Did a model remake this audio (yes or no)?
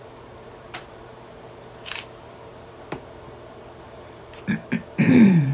yes